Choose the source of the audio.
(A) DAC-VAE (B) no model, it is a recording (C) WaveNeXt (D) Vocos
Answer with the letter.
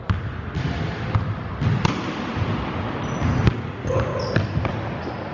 B